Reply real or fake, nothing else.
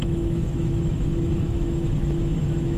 fake